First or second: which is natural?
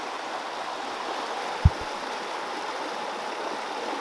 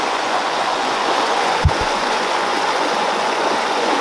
first